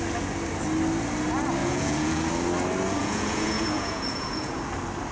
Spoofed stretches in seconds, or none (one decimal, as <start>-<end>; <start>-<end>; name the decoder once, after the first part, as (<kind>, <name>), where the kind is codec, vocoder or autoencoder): 1.6-2.3 (vocoder, Vocos); 3.0-4.6